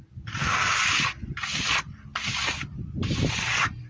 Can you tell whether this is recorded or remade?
recorded